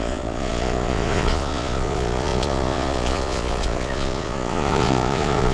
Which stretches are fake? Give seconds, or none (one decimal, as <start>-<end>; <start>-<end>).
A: 0.0-5.5